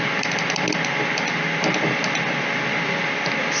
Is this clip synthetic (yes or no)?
no